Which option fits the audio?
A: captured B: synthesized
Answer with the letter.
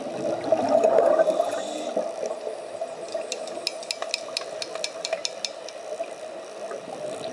A